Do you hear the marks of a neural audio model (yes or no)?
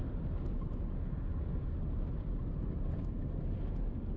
no